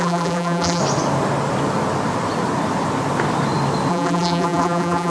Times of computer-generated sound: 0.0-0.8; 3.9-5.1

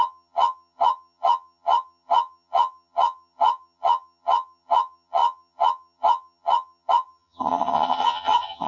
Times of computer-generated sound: 0.0-8.7

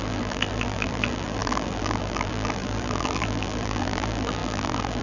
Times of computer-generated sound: 0.0-5.0

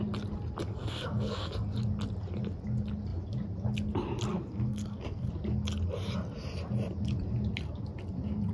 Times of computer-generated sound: 0.7-1.5; 4.3-5.3

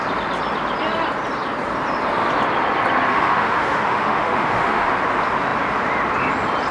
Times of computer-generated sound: 3.1-4.9

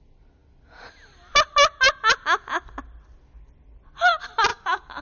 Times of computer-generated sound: 4.5-5.0

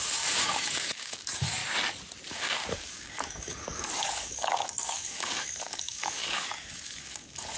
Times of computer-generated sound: 0.0-1.6; 2.3-7.6

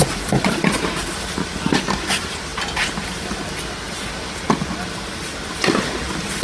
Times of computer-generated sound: none